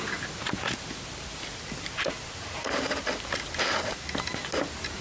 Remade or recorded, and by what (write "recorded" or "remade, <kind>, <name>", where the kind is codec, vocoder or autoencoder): recorded